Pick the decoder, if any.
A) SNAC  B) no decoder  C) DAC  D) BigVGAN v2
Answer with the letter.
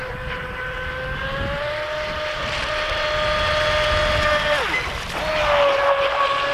B